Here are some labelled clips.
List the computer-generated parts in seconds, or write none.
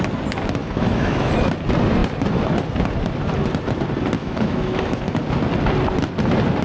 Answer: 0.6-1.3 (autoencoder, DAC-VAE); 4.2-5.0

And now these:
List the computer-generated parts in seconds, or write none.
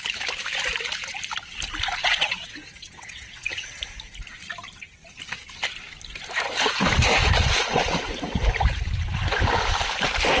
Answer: 2.0-3.8 (vocoder, WaveNeXt)